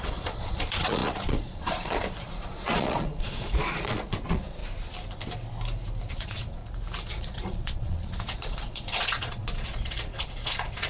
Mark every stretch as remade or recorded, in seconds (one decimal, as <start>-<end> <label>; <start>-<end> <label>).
0.0-4.6 remade; 4.6-6.1 recorded; 6.1-6.6 remade; 6.6-7.1 recorded; 7.1-10.9 remade